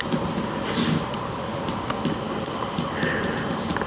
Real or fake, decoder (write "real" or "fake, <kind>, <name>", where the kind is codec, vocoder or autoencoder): real